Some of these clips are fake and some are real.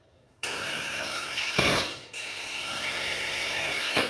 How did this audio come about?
fake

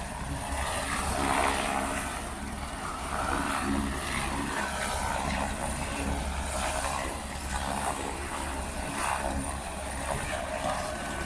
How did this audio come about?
fake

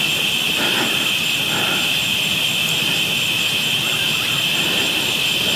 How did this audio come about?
real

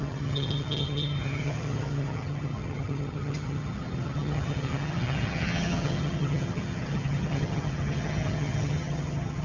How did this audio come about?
fake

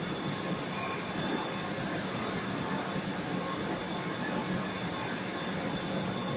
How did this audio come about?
real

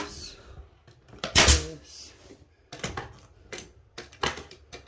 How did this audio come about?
real